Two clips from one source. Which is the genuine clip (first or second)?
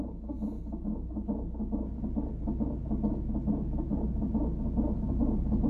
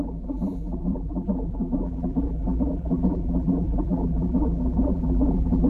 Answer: first